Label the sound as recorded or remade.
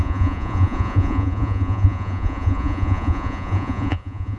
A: remade